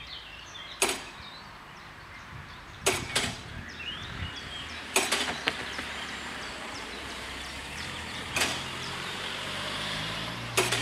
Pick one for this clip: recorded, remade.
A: remade